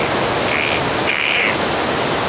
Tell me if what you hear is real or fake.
real